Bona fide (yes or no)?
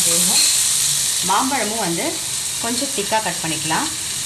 yes